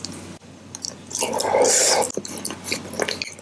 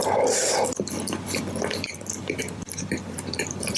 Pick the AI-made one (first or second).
second